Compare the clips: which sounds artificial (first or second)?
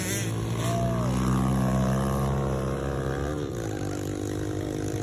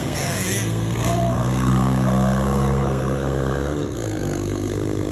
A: second